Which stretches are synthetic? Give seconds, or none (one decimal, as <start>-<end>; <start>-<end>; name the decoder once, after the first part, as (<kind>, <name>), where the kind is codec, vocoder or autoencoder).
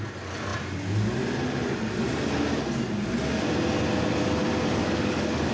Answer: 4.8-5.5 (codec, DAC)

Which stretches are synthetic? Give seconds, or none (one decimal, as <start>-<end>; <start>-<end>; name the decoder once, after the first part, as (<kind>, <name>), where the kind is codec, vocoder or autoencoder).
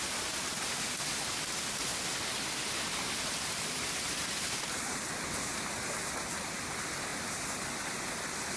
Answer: none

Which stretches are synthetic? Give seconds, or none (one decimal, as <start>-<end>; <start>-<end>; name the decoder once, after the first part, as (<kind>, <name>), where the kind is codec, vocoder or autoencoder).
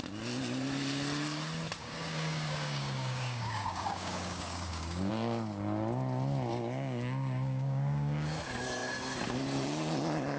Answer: 1.8-5.1 (codec, DAC); 6.5-8.4